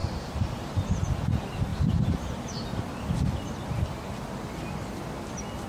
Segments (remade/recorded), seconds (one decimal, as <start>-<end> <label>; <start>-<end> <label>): 0.0-0.9 remade; 0.9-5.7 recorded